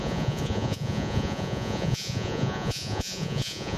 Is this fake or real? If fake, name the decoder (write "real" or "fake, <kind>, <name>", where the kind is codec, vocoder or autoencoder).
fake, vocoder, Vocos